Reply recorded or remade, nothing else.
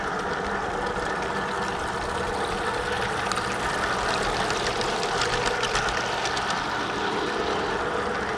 recorded